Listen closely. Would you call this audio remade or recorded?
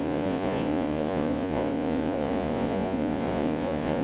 remade